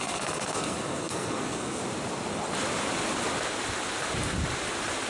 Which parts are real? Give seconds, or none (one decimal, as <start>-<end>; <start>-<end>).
1.8-5.1